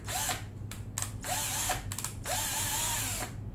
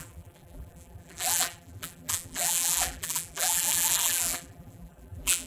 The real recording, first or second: first